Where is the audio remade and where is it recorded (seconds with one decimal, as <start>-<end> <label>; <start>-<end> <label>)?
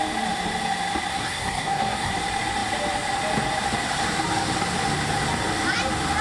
0.0-1.1 recorded; 1.1-2.1 remade; 2.1-6.2 recorded